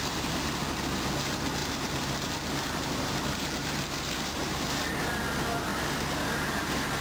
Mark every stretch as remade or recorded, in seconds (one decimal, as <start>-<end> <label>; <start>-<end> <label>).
0.0-1.6 recorded; 1.6-4.9 remade; 4.9-5.7 recorded; 5.7-7.0 remade